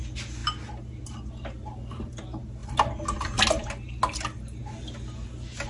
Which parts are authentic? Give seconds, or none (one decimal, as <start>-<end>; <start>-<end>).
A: 0.0-5.7

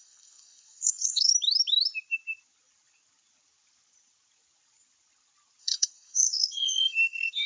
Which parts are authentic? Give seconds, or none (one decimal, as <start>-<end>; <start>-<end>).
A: 1.3-5.6

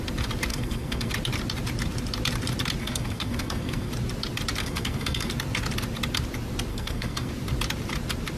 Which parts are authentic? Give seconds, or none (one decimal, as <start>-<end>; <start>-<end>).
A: 0.0-0.5; 1.1-2.8; 3.9-4.6; 5.3-6.7; 7.3-8.4

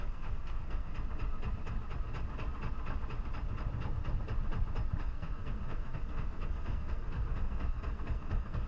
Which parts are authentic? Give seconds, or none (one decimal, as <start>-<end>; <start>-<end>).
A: 0.9-5.0